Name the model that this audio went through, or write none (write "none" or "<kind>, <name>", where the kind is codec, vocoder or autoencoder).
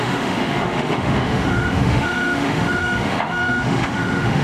autoencoder, DAC-VAE